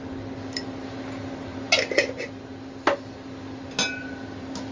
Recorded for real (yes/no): yes